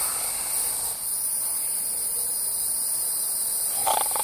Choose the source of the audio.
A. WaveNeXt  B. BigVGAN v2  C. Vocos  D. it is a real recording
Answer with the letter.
B